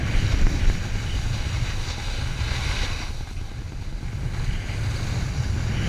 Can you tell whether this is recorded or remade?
recorded